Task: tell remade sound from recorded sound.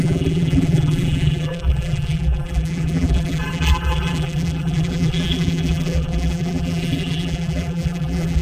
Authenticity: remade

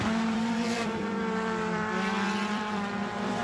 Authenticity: remade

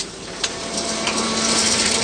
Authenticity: remade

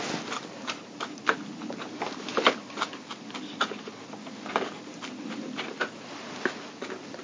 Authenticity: recorded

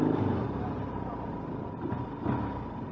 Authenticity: recorded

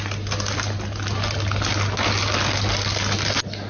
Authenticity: recorded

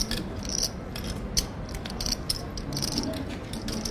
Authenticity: recorded